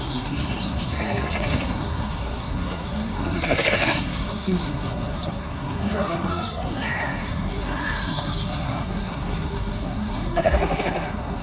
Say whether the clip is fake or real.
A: fake